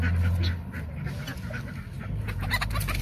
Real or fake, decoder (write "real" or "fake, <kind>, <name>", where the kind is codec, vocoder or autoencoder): real